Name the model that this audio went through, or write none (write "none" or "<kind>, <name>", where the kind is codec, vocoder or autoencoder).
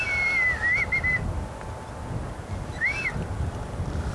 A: none